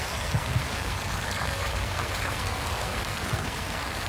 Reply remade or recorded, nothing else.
remade